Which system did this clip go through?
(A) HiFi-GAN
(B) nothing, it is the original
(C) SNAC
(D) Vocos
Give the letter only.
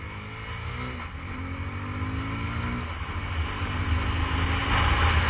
B